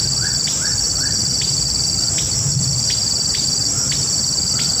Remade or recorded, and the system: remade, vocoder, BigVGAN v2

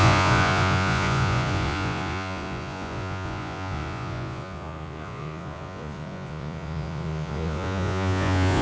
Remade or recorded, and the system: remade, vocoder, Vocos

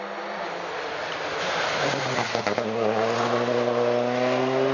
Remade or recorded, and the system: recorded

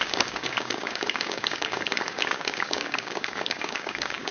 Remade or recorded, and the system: remade, codec, DAC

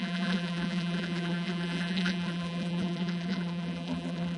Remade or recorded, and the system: remade, vocoder, BigVGAN v2